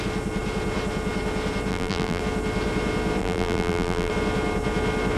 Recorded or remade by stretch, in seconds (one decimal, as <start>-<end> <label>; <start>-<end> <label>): 0.0-1.7 recorded; 1.7-2.2 remade; 2.2-3.2 recorded; 3.2-4.1 remade; 4.1-5.2 recorded